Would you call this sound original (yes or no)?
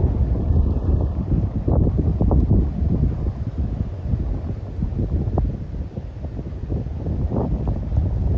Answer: yes